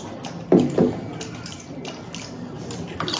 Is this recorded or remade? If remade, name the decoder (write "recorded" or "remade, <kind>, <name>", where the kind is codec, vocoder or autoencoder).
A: recorded